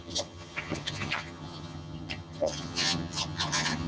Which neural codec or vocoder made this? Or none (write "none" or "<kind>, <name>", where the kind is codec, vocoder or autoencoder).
vocoder, HiFi-GAN